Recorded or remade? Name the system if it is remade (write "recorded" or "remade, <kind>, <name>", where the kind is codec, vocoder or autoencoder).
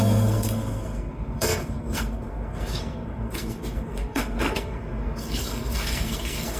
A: remade, codec, SNAC